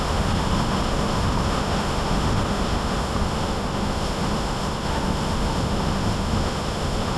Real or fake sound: fake